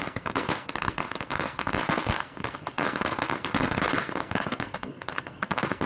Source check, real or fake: fake